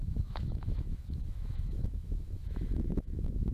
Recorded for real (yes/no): no